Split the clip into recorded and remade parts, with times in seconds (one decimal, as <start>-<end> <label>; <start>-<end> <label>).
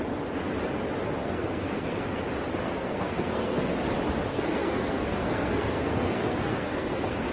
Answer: 0.0-1.2 recorded; 1.2-2.2 remade; 2.2-2.6 recorded; 2.6-3.7 remade; 3.7-4.3 recorded; 4.3-7.3 remade